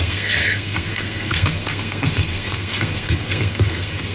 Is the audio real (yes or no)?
no